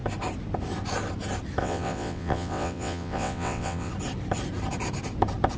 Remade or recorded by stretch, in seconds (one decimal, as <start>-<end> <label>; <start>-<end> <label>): 0.0-1.6 recorded; 1.6-3.9 remade; 3.9-5.6 recorded